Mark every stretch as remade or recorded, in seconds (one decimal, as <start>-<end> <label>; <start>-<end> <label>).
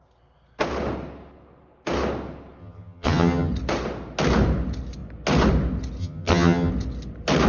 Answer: 0.0-2.6 recorded; 2.6-3.5 remade; 3.5-6.0 recorded; 6.0-6.7 remade; 6.7-7.5 recorded